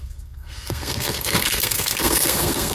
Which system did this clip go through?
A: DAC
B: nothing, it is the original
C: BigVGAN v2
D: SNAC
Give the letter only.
D